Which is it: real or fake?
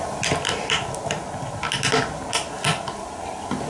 real